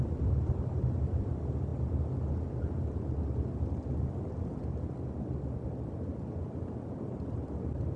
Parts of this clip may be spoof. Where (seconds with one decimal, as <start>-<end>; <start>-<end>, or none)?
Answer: 0.0-1.7; 3.8-4.6; 6.3-8.0